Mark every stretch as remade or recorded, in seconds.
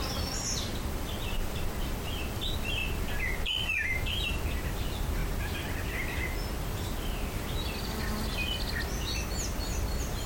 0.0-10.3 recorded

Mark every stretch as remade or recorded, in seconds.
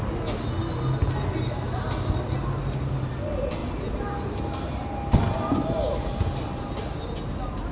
0.0-7.7 recorded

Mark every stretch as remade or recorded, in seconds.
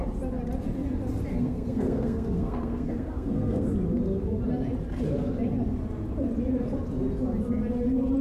0.0-1.3 recorded; 1.3-3.7 remade; 3.7-8.2 recorded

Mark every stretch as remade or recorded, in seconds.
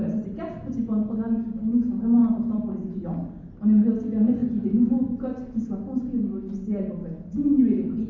0.0-8.1 recorded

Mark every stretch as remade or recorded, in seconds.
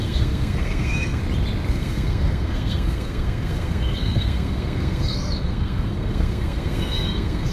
0.0-1.2 remade; 1.2-1.7 recorded; 1.7-7.5 remade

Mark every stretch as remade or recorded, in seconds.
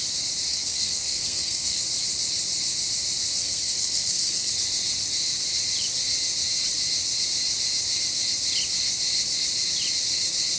0.0-0.5 recorded; 0.5-1.8 remade; 1.8-3.4 recorded; 3.4-4.5 remade; 4.5-10.6 recorded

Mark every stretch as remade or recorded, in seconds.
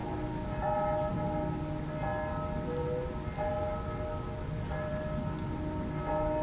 0.0-6.4 recorded